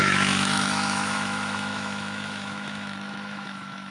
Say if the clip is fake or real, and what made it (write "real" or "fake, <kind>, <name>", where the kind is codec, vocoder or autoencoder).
fake, autoencoder, DAC-VAE